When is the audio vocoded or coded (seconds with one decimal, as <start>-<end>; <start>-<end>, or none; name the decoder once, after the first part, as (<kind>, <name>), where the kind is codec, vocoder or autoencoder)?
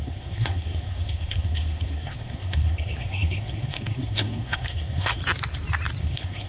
0.0-5.2 (codec, SNAC); 6.0-6.5